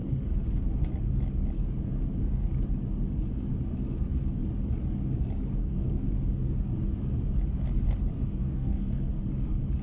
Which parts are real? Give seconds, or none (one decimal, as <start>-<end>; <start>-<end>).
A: 0.0-5.6; 6.1-8.4; 9.1-9.8